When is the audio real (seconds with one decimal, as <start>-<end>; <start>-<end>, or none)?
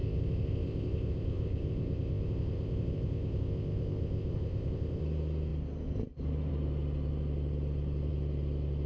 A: 5.0-8.9